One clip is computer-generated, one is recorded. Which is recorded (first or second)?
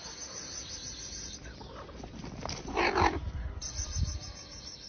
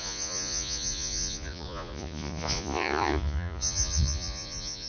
first